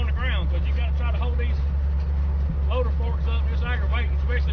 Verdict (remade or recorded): recorded